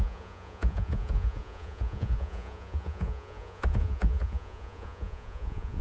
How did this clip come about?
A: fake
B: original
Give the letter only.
A